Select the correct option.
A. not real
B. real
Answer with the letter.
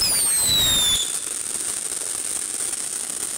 B